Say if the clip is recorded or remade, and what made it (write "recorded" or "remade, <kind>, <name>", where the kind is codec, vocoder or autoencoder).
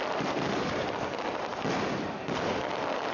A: recorded